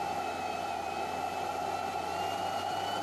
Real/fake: real